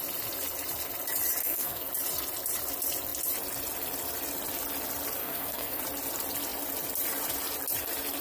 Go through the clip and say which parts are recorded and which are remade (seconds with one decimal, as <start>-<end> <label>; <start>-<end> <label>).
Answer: 0.0-1.4 recorded; 1.4-1.9 remade; 1.9-5.2 recorded; 5.2-5.8 remade; 5.8-8.2 recorded